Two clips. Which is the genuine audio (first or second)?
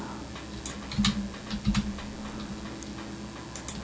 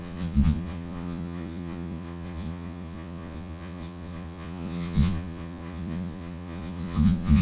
first